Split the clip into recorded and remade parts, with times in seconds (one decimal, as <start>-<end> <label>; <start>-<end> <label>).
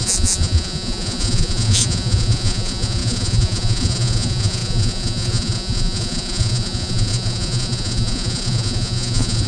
0.0-9.5 remade